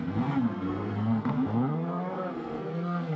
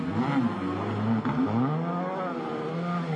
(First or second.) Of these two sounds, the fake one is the first